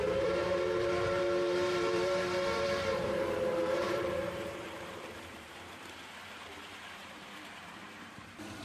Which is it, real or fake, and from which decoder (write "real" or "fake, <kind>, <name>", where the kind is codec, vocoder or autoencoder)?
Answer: fake, vocoder, BigVGAN v2